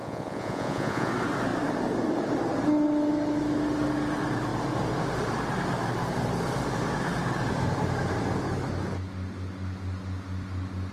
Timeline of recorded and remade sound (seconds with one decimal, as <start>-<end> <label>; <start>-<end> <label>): 0.0-1.1 remade; 1.1-10.9 recorded